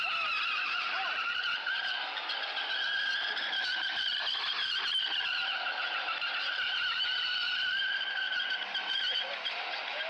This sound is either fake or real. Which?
fake